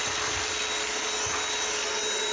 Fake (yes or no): no